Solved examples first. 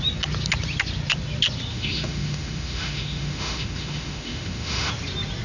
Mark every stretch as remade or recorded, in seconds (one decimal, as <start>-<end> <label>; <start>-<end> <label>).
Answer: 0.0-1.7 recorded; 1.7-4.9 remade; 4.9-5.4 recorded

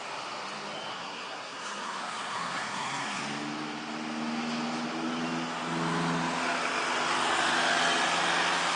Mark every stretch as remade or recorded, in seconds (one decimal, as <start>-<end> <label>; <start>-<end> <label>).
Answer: 0.0-0.9 recorded; 0.9-3.2 remade; 3.2-8.8 recorded

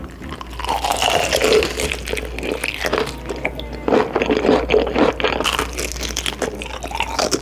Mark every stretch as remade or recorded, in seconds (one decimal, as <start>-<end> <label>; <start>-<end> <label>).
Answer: 0.0-7.4 recorded